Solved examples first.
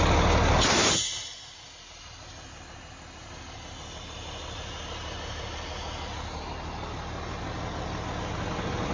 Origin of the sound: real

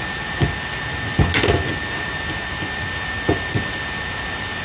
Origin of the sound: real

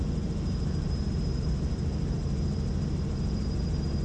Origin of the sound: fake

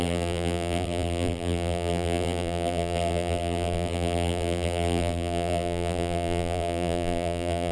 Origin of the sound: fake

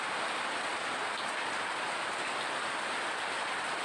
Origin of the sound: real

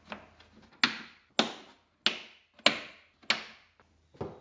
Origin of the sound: real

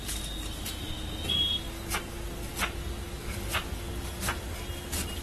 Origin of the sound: real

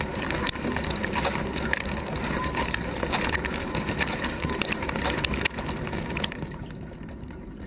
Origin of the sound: fake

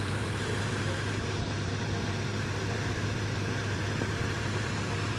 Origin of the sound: fake